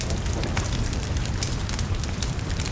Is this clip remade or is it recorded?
remade